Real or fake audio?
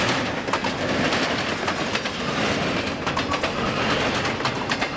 real